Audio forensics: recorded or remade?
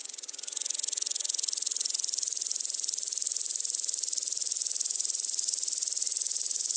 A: remade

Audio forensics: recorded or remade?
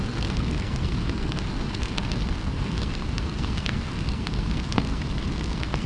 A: remade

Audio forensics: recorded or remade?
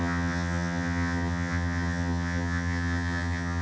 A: remade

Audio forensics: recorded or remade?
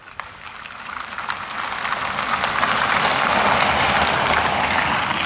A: recorded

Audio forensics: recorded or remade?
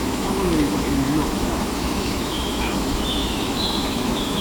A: remade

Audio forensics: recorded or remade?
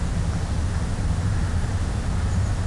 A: recorded